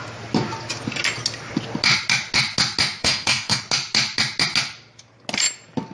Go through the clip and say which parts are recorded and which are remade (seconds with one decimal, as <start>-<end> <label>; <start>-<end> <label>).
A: 0.0-3.0 recorded; 3.0-3.6 remade; 3.6-5.9 recorded